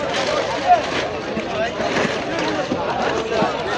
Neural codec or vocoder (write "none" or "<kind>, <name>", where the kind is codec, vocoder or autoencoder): none